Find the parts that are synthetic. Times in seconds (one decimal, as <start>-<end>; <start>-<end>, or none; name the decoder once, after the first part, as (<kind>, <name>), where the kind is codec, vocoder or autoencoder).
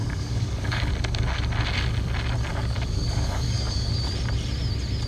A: 0.0-0.9 (codec, DAC); 2.5-3.9